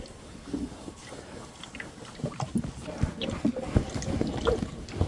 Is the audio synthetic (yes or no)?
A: no